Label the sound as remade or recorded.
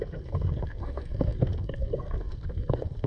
remade